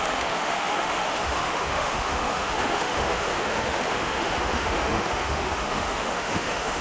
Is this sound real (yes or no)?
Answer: no